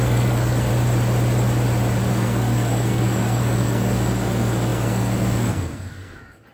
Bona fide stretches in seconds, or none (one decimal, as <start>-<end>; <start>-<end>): 0.7-2.1

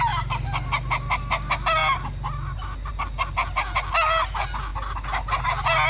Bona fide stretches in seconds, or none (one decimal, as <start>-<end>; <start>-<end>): 0.0-5.9

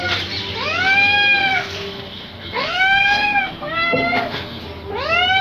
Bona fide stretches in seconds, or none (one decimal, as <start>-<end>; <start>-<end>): 0.0-1.4; 4.6-5.4

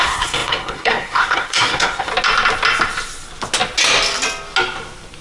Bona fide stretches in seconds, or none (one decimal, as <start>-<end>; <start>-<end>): 2.1-5.2

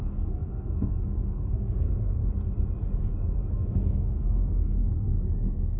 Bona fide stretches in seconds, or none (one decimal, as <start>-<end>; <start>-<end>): 2.2-3.5

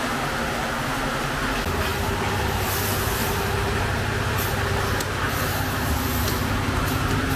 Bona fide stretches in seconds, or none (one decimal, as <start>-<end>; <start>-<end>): 0.0-7.4

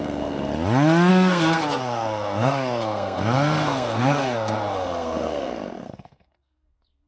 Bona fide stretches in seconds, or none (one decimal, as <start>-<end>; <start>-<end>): 0.5-1.1